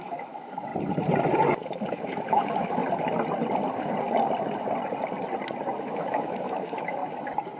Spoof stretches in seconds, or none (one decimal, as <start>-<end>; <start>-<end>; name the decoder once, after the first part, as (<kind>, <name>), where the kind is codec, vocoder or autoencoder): 0.0-0.7 (autoencoder, DAC-VAE); 1.6-2.8; 5.8-7.0